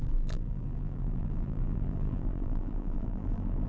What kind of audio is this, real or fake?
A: fake